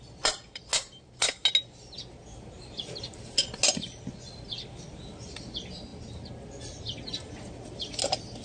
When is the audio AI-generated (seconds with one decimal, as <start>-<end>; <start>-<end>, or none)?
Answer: none